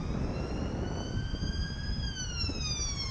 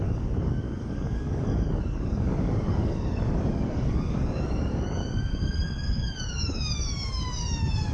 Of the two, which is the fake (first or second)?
second